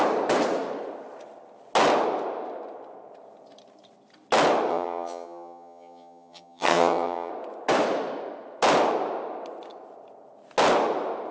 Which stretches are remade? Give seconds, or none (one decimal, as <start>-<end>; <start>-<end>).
4.7-7.3